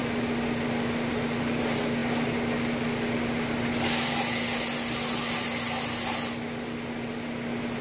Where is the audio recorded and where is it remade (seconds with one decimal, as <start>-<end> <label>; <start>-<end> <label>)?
0.0-7.8 recorded